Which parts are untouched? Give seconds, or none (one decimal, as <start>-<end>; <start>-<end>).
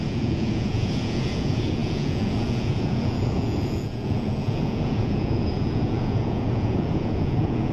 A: none